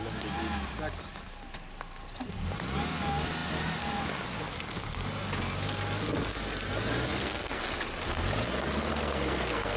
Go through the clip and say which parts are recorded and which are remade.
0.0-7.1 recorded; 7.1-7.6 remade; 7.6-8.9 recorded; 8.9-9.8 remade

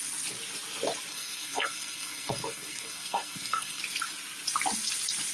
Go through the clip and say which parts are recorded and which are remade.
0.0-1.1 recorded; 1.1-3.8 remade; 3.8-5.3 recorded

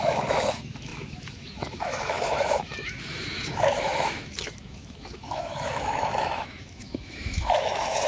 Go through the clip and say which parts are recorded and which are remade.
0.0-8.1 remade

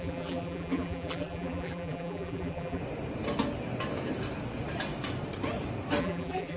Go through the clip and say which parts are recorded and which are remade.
0.0-2.8 remade; 2.8-6.0 recorded; 6.0-6.6 remade

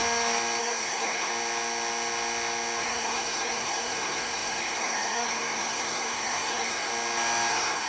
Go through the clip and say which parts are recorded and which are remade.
0.0-0.6 recorded; 0.6-1.3 remade; 1.3-2.8 recorded; 2.8-6.9 remade; 6.9-7.5 recorded; 7.5-7.9 remade

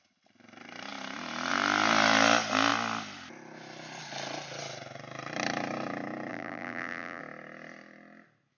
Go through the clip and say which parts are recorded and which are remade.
0.0-6.3 recorded; 6.3-7.2 remade; 7.2-8.6 recorded